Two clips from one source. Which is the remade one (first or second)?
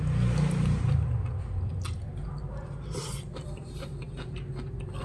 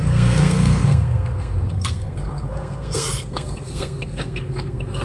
second